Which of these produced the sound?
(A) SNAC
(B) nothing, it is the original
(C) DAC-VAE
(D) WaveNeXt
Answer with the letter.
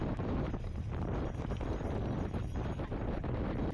B